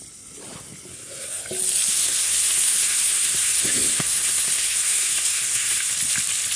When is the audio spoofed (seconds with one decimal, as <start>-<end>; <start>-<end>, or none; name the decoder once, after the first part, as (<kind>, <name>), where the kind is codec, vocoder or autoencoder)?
0.9-1.4 (codec, SNAC); 1.9-5.9